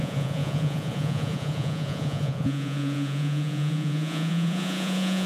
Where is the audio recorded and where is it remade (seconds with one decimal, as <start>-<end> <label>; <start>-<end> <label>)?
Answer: 0.0-5.3 remade